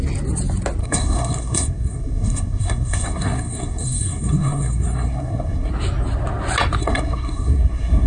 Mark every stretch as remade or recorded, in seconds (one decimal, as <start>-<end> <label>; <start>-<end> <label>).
0.0-0.8 recorded; 0.8-5.7 remade; 5.7-6.8 recorded; 6.8-8.1 remade